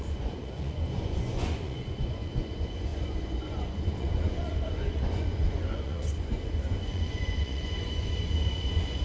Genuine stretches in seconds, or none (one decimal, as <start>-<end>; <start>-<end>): none